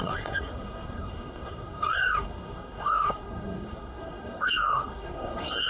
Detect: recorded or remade remade